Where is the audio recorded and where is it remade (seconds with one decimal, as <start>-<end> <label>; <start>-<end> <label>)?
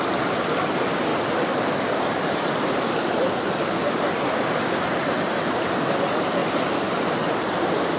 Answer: 0.0-8.0 recorded